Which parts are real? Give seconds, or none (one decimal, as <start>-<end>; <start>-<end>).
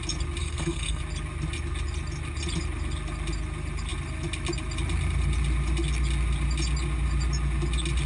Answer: 0.0-0.4; 1.0-8.1